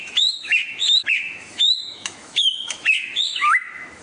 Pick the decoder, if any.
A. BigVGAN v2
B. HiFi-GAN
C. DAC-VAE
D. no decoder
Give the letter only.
C